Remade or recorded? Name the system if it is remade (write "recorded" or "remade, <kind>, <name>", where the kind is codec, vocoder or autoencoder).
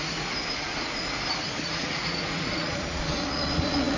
remade, vocoder, Vocos